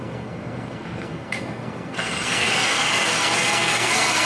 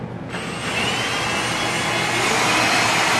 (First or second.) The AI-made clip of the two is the first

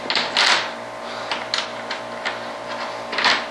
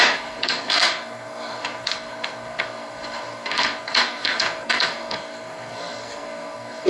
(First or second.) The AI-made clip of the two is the second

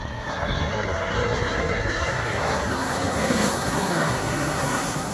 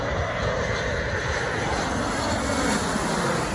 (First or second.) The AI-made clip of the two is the first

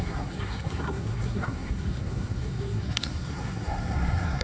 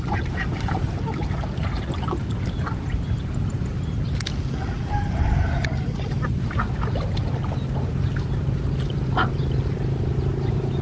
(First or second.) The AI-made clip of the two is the first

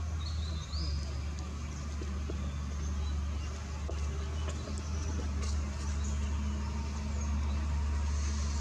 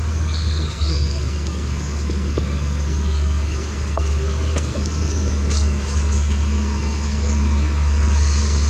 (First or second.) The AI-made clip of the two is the second